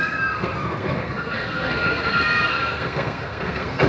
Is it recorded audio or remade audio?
remade